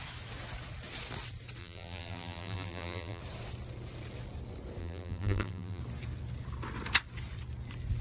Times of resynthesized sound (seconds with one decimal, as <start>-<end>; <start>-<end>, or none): 1.6-3.2; 4.8-5.8